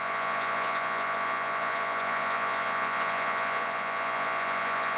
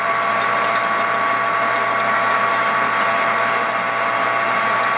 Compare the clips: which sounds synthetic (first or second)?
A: first